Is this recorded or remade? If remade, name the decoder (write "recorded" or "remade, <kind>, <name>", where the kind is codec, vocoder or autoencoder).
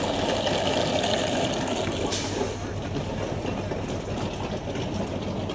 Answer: recorded